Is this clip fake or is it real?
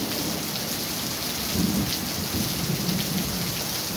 real